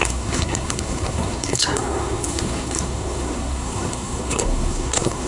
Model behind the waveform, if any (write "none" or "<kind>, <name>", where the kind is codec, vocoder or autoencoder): codec, SNAC